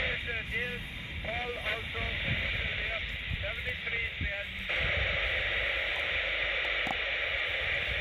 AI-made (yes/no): yes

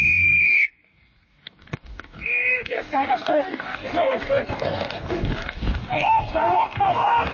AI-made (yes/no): yes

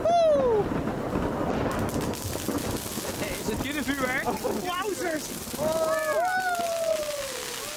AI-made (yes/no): no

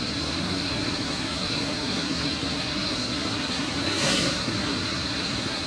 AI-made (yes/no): yes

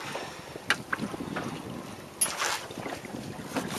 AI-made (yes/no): no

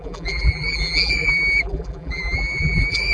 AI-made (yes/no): yes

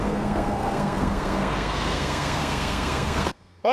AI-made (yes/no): yes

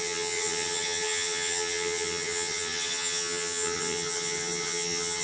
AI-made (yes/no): yes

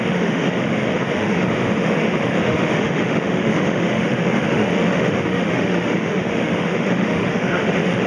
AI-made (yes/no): yes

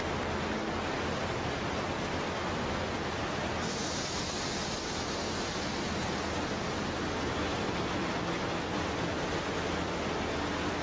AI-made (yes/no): no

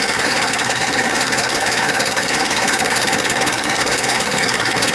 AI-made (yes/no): yes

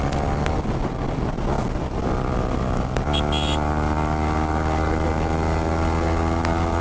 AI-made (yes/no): no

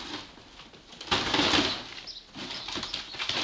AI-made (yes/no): no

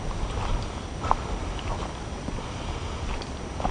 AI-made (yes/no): no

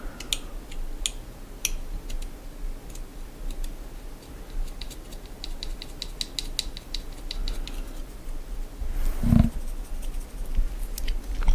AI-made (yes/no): no